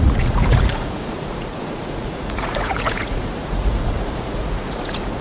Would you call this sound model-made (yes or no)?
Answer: yes